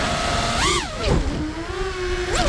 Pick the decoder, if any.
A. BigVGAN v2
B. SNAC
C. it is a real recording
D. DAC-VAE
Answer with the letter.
C